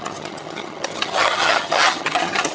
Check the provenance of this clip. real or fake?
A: fake